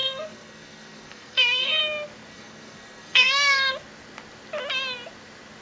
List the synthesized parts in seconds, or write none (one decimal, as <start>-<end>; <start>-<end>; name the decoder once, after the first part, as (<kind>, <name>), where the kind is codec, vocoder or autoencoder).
0.0-1.8 (codec, SNAC); 2.3-3.7